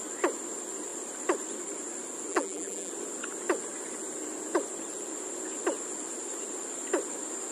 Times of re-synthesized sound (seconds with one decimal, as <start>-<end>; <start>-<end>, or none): 2.3-2.9